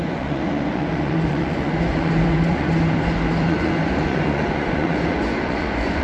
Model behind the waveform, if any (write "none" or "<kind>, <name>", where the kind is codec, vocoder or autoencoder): vocoder, Vocos